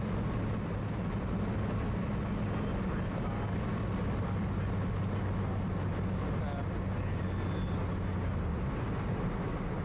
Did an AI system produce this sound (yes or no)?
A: no